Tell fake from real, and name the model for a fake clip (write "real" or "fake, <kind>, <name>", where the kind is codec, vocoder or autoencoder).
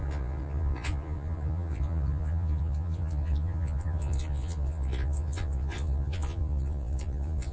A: fake, vocoder, Vocos